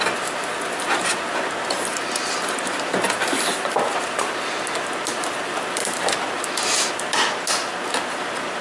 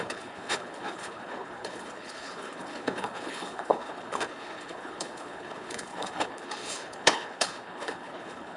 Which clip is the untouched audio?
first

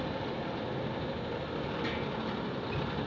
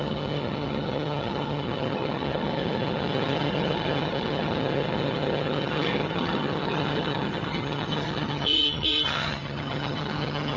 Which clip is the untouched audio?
first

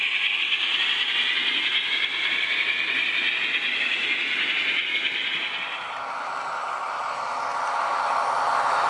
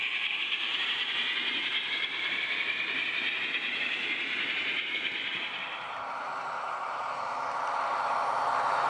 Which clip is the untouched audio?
first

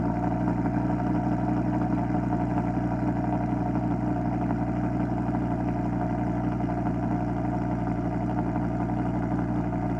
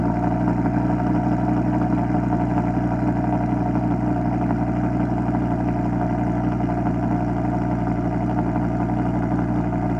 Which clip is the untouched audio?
second